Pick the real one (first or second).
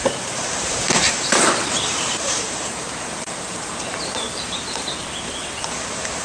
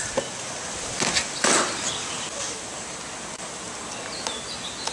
second